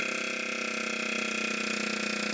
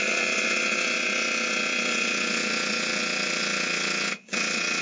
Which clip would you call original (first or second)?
first